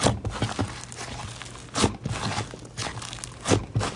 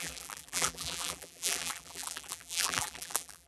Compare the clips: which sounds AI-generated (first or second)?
second